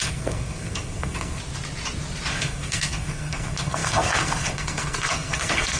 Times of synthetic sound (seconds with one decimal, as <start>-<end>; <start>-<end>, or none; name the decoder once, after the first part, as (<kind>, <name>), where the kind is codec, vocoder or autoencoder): 0.0-1.4 (codec, SNAC); 2.3-5.8